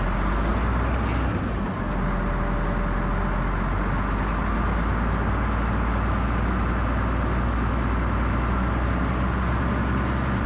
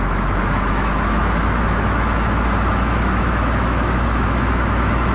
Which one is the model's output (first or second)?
second